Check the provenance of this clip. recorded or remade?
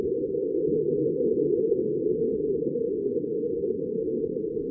remade